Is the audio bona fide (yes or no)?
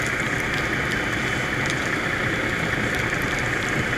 yes